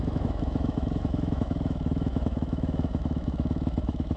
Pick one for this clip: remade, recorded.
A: remade